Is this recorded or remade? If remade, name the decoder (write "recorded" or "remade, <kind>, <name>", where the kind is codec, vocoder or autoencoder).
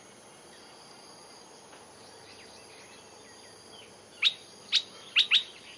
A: recorded